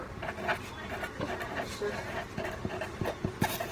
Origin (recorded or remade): recorded